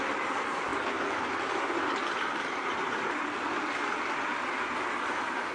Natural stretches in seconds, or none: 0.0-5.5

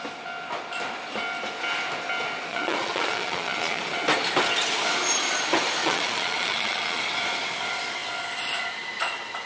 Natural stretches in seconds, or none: 0.0-2.5; 3.8-5.8; 7.0-9.5

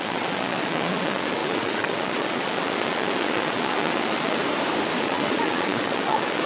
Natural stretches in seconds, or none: 4.4-5.0

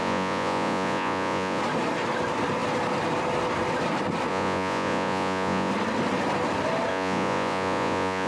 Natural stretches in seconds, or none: 1.6-4.3; 5.7-6.9

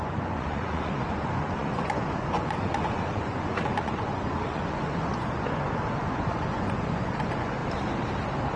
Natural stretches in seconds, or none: 7.6-8.6

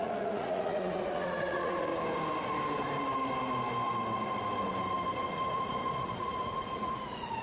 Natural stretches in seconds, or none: 1.9-5.5

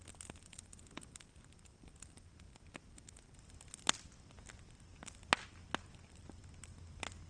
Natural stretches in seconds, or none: 0.0-7.3